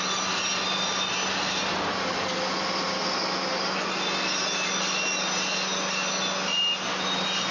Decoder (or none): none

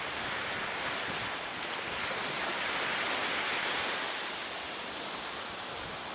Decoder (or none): none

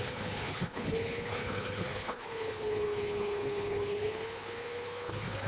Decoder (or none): codec, HILCodec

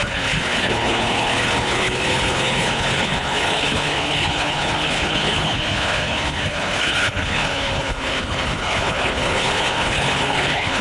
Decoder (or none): codec, HILCodec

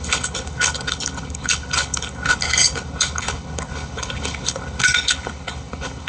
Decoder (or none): codec, HILCodec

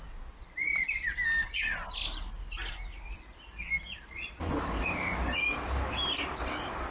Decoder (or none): none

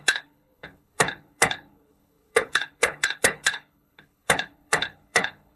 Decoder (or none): codec, HILCodec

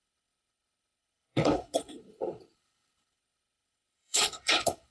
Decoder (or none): codec, HILCodec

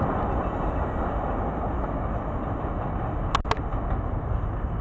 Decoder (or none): none